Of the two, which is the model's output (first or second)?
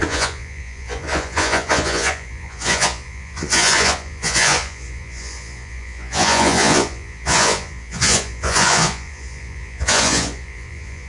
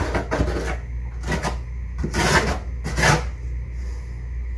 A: first